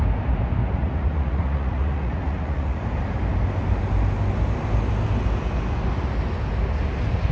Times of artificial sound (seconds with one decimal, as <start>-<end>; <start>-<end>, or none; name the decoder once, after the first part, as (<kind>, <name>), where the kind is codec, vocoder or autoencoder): 0.6-2.8 (vocoder, Vocos)